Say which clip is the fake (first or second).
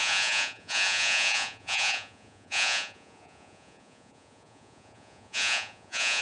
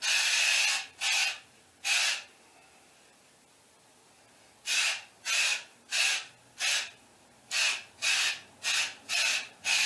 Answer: first